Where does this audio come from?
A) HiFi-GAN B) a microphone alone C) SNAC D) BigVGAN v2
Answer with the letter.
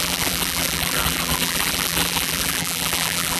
D